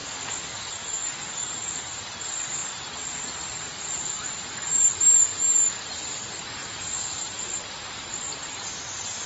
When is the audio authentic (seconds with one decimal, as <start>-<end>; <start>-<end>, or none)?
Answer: 0.7-9.3